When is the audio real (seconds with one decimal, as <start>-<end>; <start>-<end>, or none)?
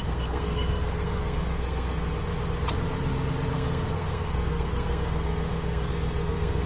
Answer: 2.0-3.5